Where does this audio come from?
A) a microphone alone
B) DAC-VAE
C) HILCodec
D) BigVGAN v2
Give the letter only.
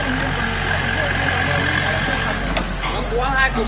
A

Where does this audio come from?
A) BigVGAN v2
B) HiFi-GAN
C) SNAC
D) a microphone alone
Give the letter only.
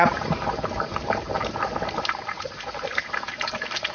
A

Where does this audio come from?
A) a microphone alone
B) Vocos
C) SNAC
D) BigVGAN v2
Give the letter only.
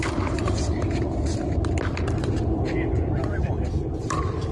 D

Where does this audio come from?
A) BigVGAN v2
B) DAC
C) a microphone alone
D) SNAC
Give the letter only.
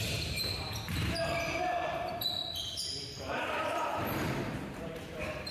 A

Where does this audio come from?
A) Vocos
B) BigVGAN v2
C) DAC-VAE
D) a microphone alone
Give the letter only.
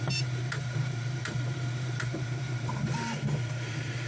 B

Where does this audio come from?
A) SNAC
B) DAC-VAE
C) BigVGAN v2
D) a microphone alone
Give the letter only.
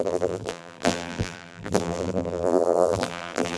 C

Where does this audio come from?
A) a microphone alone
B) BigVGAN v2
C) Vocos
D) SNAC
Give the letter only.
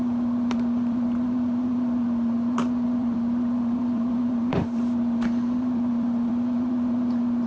B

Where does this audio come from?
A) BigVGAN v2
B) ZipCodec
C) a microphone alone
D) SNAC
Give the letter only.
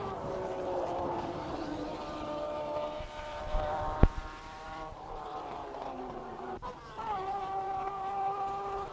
A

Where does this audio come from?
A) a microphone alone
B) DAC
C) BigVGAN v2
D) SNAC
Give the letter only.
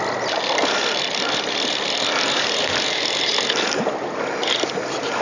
A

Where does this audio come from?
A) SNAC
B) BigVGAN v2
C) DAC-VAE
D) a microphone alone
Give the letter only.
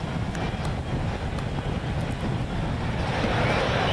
D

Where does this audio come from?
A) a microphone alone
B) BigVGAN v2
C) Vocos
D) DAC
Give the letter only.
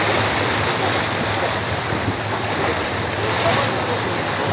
B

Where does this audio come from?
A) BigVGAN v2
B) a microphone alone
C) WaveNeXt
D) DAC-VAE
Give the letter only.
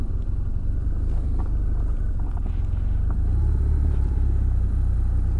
A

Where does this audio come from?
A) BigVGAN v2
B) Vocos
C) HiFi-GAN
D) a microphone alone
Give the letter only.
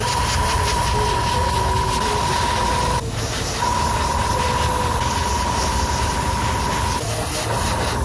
D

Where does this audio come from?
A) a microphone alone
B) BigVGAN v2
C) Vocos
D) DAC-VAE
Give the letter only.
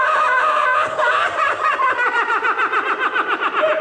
B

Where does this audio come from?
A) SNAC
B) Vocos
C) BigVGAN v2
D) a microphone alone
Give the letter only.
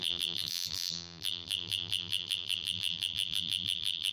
C